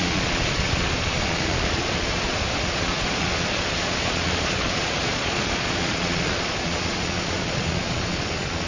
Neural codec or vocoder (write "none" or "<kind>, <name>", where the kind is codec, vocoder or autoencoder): vocoder, Vocos